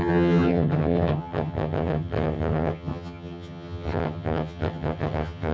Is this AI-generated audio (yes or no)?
yes